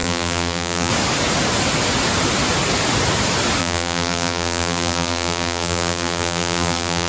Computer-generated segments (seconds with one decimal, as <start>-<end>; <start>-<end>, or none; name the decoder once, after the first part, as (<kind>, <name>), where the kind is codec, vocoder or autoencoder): 0.0-0.9 (vocoder, BigVGAN v2); 3.6-7.1